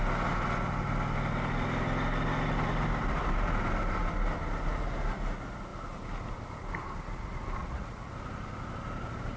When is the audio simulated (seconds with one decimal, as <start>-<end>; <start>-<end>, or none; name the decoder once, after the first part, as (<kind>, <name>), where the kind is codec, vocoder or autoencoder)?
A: 7.6-8.1 (vocoder, Vocos)